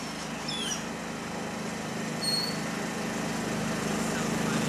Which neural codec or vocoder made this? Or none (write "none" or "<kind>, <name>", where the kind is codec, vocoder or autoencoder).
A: none